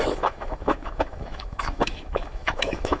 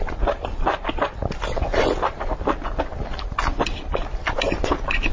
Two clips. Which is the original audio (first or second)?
second